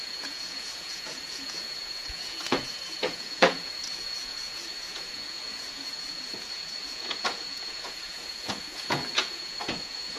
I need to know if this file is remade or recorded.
remade